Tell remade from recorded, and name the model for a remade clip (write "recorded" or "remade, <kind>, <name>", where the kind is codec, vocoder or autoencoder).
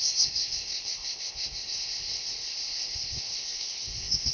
remade, codec, ZipCodec